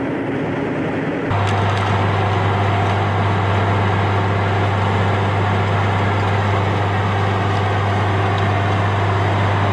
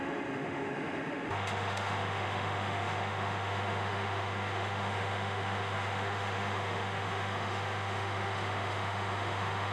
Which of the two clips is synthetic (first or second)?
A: second